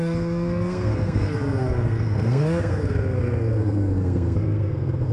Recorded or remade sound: remade